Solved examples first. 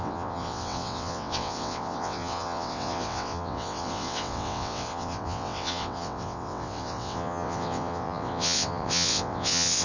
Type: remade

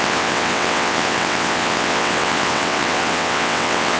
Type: remade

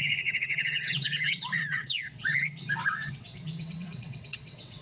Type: remade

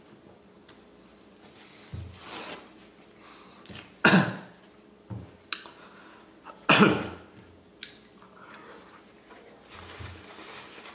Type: recorded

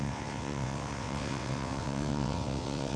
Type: remade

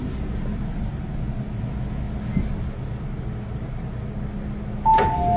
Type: recorded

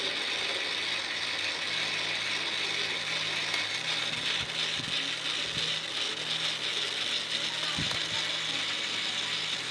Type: recorded